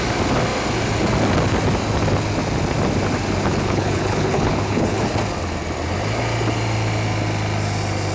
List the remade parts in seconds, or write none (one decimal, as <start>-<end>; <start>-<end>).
3.5-5.0

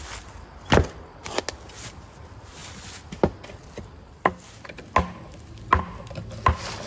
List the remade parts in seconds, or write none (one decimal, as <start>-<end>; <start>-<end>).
none